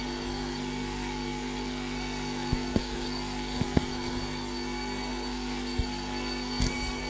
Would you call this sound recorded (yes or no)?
no